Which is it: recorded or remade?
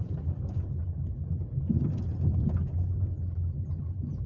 recorded